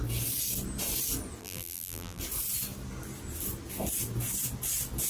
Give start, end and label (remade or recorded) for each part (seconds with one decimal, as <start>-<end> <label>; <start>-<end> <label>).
0.0-1.4 recorded; 1.4-2.2 remade; 2.2-5.1 recorded